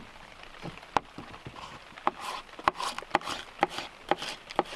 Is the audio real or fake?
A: real